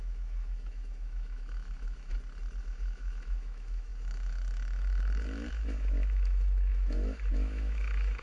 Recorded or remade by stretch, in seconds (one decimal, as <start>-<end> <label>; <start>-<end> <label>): 0.0-2.1 remade; 2.1-2.6 recorded; 2.6-8.2 remade